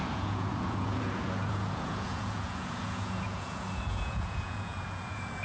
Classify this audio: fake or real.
fake